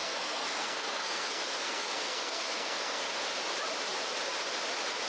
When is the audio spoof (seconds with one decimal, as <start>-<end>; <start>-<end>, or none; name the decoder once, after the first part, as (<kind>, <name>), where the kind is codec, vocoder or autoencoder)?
0.0-3.1 (codec, SNAC)